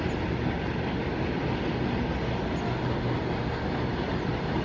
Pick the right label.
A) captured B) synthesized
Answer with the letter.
A